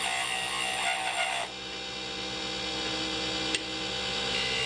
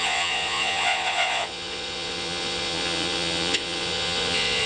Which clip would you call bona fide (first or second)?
first